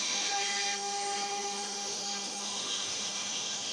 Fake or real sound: fake